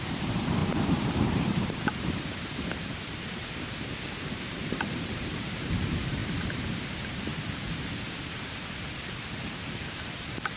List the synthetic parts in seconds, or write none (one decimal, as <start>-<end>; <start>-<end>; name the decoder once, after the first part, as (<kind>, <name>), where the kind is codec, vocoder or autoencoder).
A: 0.0-7.3 (vocoder, BigVGAN v2); 7.8-10.6

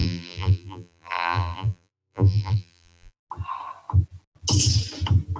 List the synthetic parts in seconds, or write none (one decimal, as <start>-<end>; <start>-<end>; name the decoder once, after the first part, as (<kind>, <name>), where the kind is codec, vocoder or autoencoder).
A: 0.0-3.2 (vocoder, BigVGAN v2)

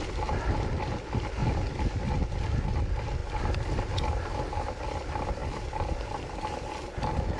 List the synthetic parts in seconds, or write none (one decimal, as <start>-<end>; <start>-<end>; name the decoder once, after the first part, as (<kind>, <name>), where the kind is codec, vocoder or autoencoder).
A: 5.4-6.0 (vocoder, BigVGAN v2)

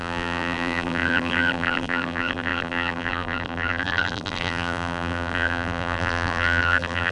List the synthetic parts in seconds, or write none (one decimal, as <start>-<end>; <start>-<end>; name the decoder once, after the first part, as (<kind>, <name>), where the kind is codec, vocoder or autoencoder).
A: 0.0-7.1 (vocoder, BigVGAN v2)

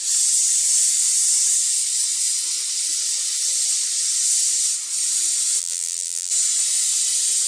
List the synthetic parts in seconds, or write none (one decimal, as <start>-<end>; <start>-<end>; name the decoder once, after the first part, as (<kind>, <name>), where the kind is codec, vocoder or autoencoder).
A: 5.6-6.3 (vocoder, BigVGAN v2)

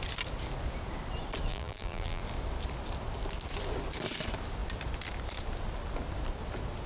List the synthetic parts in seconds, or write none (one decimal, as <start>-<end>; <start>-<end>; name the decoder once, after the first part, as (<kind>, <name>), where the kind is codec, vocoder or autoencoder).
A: 1.5-2.2 (vocoder, BigVGAN v2)

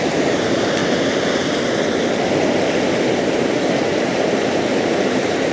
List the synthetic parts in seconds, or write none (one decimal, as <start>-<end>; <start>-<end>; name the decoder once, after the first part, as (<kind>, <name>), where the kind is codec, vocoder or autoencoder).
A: 0.0-0.8 (vocoder, BigVGAN v2); 3.2-5.5